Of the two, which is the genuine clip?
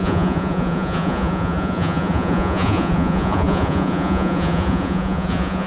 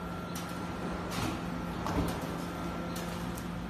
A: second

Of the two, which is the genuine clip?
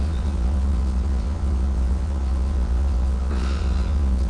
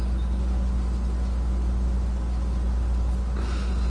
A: second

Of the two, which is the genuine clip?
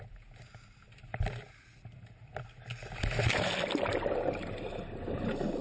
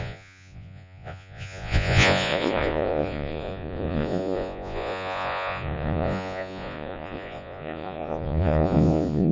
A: first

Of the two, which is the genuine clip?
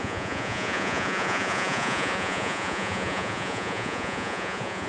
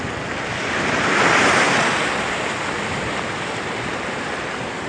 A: second